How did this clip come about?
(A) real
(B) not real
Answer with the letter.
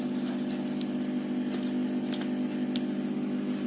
A